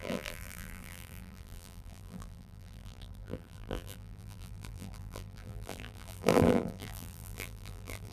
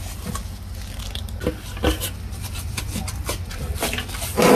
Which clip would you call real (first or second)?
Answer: second